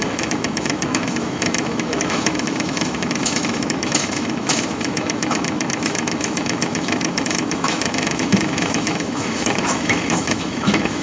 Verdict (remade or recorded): remade